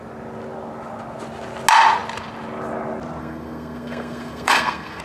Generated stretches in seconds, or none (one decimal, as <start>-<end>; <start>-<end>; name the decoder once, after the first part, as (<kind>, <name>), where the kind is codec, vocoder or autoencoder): 3.2-5.0 (codec, SNAC)